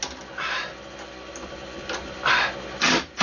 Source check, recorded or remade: recorded